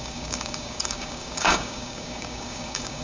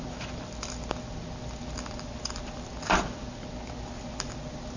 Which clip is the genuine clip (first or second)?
second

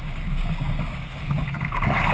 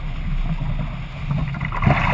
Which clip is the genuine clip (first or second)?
second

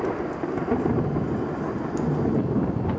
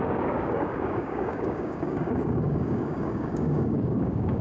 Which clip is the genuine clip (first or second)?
first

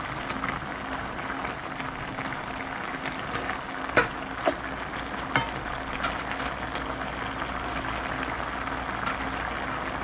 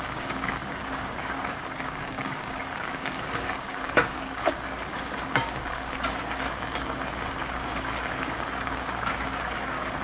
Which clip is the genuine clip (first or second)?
first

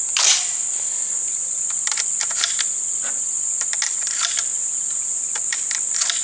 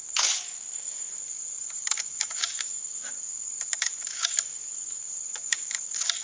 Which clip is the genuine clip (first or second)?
first